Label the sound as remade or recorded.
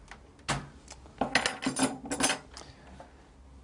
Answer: recorded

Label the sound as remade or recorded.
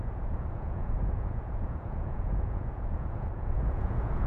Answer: remade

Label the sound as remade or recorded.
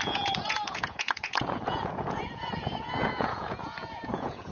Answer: remade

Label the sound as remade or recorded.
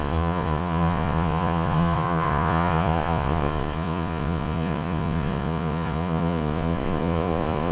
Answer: remade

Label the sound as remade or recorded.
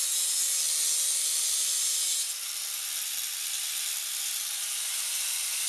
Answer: recorded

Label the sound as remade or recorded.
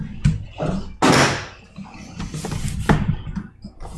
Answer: recorded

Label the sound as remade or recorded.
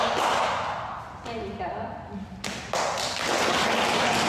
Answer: recorded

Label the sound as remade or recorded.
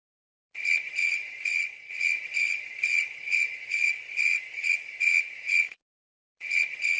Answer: remade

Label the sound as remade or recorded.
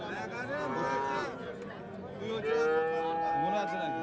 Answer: recorded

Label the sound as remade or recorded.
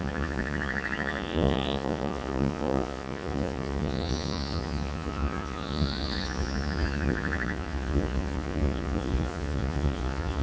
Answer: remade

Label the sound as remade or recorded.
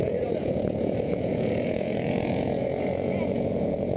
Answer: remade